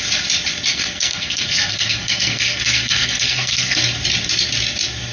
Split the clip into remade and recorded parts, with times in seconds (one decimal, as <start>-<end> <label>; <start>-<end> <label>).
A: 0.0-0.7 recorded; 0.7-3.8 remade; 3.8-5.1 recorded